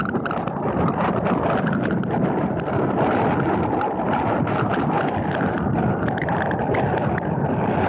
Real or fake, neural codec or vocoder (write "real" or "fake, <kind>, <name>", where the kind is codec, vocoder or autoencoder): real